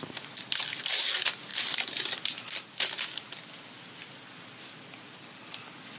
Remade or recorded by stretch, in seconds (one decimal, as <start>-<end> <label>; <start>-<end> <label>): 0.0-6.0 recorded